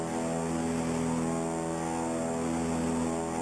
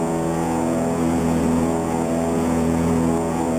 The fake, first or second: second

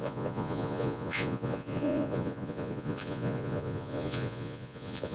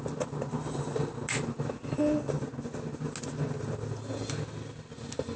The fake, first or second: first